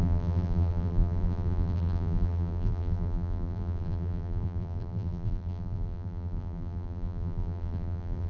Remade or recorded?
remade